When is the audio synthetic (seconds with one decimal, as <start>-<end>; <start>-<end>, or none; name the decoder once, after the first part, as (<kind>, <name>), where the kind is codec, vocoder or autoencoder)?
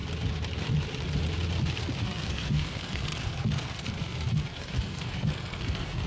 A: 2.0-6.1 (codec, SNAC)